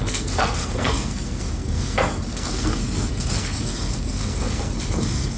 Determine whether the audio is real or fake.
fake